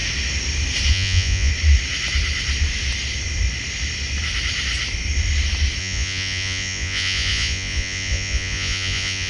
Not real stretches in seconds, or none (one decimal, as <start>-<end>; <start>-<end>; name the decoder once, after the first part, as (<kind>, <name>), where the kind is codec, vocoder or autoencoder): 0.9-1.5 (vocoder, Vocos); 5.8-9.3